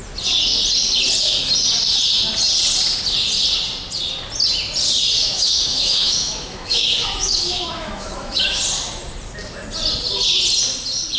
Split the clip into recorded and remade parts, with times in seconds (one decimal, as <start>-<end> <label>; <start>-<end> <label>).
0.0-5.2 recorded; 5.2-8.6 remade; 8.6-11.2 recorded